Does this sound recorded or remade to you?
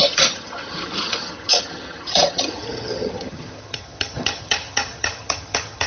remade